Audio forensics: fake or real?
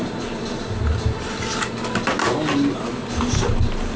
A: real